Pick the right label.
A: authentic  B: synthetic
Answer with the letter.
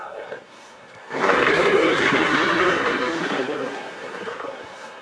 B